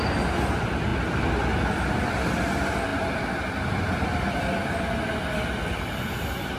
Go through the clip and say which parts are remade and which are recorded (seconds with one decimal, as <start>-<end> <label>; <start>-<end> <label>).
0.0-6.6 recorded

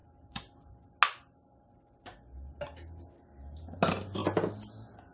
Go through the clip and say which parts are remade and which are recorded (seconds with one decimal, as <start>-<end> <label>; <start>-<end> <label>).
0.0-5.1 recorded

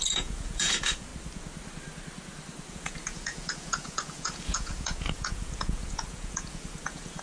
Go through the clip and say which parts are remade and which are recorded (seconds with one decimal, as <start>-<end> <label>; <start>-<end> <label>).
0.0-1.1 remade; 1.1-2.7 recorded; 2.7-7.2 remade

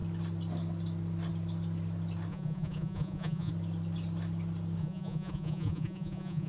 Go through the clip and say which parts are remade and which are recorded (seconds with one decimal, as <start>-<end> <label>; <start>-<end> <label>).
0.0-2.3 recorded; 2.3-3.5 remade; 3.5-4.8 recorded; 4.8-6.5 remade

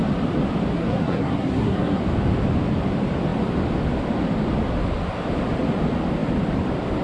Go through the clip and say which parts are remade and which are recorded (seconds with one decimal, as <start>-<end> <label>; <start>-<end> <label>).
0.0-0.7 recorded; 0.7-2.0 remade; 2.0-7.0 recorded

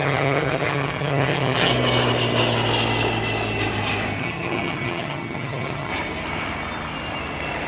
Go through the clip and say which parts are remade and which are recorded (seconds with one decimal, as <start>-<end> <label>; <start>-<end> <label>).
0.0-1.7 remade; 1.7-4.2 recorded; 4.2-5.9 remade; 5.9-7.7 recorded

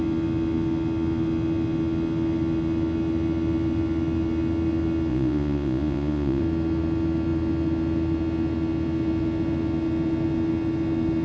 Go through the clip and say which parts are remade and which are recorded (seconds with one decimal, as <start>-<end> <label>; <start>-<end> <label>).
0.0-5.1 recorded; 5.1-6.4 remade; 6.4-11.2 recorded

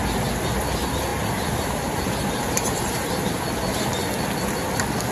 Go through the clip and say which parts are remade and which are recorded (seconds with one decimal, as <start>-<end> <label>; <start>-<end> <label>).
0.0-1.1 recorded; 1.1-3.3 remade; 3.3-5.1 recorded